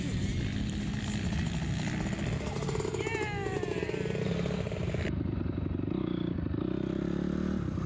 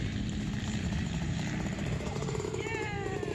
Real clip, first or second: first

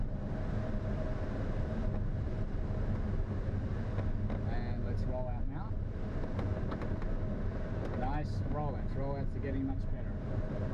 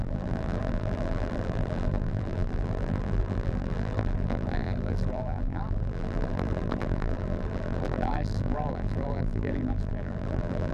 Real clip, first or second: first